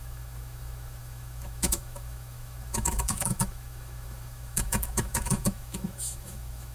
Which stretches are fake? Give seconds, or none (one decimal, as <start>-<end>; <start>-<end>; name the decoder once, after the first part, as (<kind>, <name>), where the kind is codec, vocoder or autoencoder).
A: 0.0-6.7 (autoencoder, DAC-VAE)